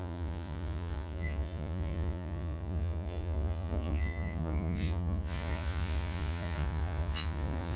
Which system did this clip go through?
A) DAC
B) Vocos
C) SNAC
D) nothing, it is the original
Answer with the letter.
B